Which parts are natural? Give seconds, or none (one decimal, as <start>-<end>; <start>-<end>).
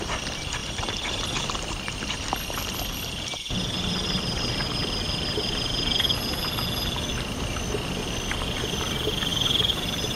0.0-0.6; 1.4-9.3